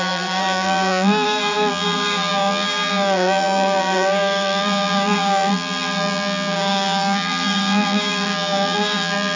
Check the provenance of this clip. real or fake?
fake